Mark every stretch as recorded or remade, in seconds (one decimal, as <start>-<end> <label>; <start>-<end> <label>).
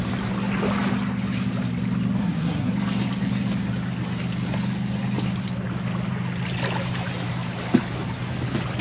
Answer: 0.0-2.2 recorded; 2.2-2.7 remade; 2.7-8.8 recorded